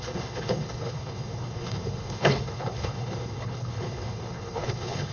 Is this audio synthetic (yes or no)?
yes